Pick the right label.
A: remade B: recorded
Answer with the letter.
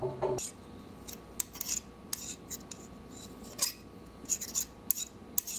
B